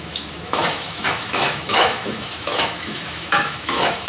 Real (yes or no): no